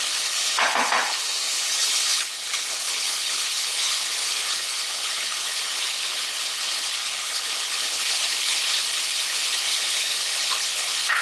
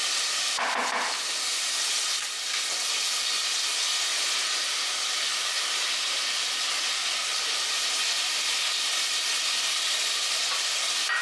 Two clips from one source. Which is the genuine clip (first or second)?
second